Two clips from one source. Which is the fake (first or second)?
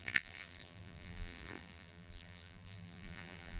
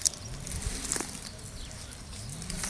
first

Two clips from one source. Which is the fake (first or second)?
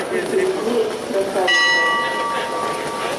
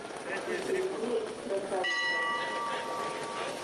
second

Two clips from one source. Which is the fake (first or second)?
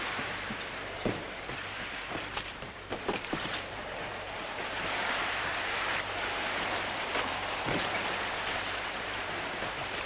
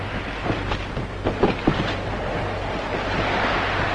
first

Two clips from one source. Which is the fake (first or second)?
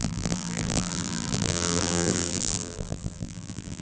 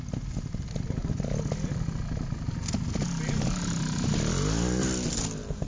first